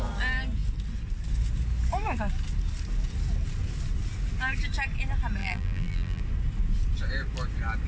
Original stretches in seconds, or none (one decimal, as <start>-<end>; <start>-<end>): 0.0-5.4; 6.2-7.9